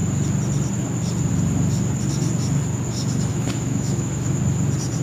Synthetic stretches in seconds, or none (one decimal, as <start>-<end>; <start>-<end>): 3.3-4.4